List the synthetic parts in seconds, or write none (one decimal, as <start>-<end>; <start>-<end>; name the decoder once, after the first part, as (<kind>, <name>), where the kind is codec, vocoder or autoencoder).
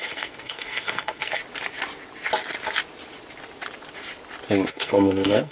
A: 0.0-1.4 (codec, SNAC); 4.7-5.5